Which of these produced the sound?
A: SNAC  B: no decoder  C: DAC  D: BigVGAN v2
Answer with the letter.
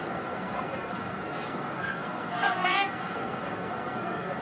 A